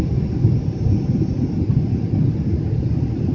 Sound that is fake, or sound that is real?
real